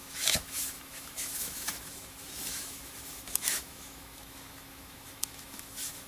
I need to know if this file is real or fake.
fake